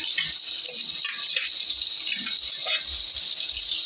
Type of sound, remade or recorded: recorded